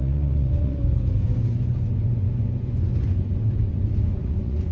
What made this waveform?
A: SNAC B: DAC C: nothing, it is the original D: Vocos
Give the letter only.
D